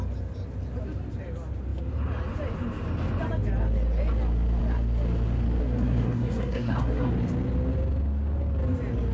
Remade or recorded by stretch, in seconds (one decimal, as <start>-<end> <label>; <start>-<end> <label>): 0.0-5.6 recorded; 5.6-7.1 remade; 7.1-9.1 recorded